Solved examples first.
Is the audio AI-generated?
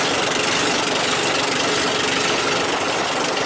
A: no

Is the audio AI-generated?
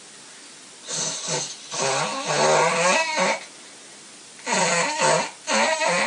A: no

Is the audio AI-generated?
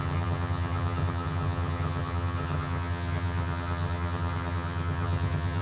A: yes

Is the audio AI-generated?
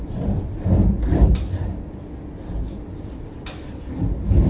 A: no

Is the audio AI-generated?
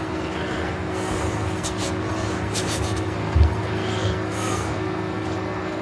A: yes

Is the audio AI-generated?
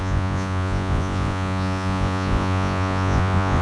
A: yes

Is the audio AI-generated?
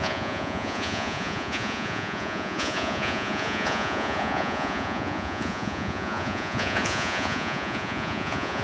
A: yes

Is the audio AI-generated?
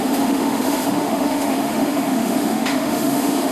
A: yes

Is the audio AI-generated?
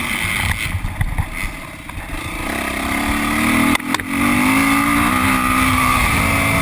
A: no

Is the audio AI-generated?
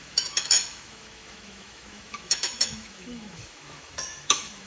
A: yes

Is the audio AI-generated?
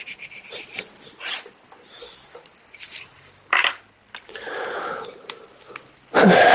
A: no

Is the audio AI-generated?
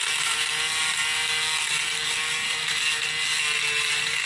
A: no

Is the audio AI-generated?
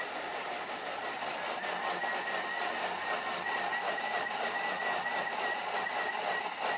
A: no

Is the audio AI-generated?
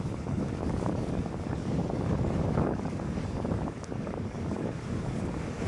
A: yes